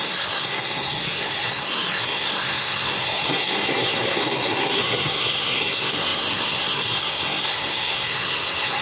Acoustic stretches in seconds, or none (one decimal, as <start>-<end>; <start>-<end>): none